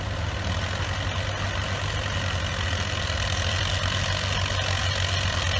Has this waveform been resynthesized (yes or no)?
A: no